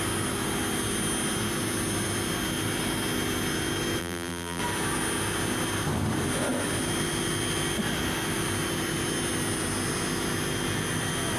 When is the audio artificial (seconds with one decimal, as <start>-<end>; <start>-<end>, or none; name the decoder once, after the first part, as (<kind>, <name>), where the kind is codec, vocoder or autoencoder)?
4.0-4.6 (vocoder, BigVGAN v2)